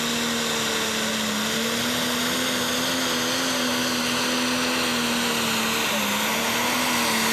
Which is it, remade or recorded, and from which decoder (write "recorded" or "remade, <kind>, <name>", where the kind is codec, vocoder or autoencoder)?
recorded